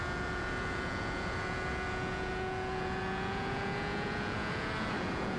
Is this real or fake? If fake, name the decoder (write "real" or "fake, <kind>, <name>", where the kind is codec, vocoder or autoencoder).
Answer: fake, vocoder, Vocos